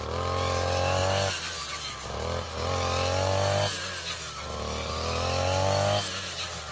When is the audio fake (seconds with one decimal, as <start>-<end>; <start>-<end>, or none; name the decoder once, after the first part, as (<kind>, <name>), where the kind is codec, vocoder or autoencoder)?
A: none